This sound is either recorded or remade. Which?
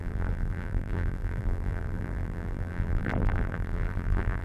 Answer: remade